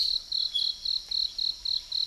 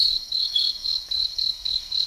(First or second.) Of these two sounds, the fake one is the second